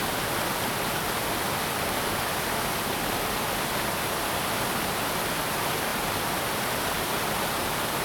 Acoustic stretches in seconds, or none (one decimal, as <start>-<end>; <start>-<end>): 0.0-8.0